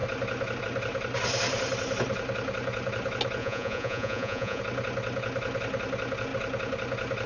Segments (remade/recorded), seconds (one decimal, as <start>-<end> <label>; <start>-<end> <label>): 0.0-3.4 recorded; 3.4-4.6 remade; 4.6-7.3 recorded